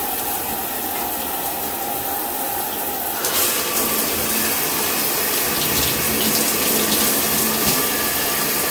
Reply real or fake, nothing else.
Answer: real